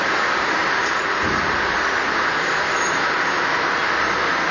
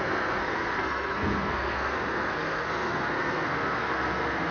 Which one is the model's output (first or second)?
second